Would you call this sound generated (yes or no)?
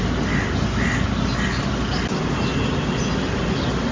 no